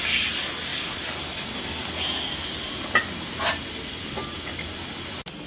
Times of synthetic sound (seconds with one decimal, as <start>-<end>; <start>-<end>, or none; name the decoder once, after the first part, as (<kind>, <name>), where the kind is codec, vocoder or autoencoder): none